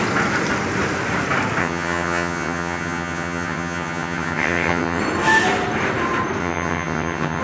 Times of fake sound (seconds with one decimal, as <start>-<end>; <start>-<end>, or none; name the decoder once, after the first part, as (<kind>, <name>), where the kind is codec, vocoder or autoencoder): 1.6-5.0 (vocoder, HiFi-GAN); 6.4-7.4